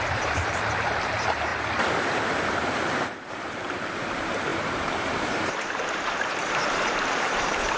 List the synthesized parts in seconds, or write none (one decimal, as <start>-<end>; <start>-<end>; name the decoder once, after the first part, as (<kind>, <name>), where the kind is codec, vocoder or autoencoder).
0.0-1.5 (vocoder, BigVGAN v2); 3.2-7.8

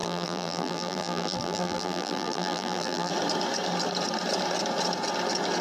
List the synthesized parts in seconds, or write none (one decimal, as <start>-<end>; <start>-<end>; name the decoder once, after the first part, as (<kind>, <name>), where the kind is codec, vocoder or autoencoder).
0.0-3.1 (vocoder, BigVGAN v2)

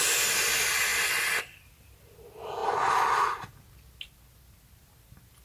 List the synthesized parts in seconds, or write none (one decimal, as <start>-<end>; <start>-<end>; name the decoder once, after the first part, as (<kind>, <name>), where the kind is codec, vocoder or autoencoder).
none

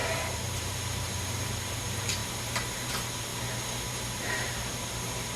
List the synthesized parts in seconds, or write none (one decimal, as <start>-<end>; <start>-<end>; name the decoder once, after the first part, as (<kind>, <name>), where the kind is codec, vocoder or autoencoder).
0.0-3.3 (vocoder, BigVGAN v2); 3.9-5.4